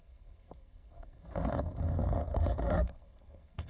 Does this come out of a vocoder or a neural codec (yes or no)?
yes